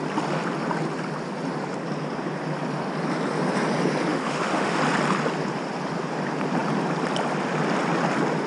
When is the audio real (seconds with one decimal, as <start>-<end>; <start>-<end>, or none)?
0.0-4.1; 4.8-8.5